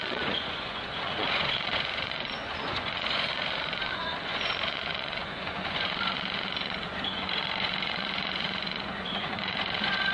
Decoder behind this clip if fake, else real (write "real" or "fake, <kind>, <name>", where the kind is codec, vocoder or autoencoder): fake, vocoder, Vocos